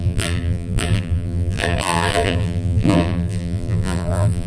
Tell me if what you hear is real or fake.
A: fake